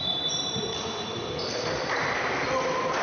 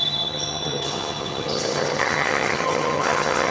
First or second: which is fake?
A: second